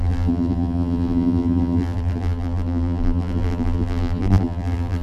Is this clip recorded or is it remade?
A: remade